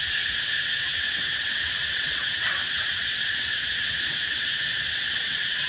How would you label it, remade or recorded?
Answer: remade